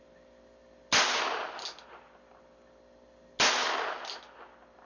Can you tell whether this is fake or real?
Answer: real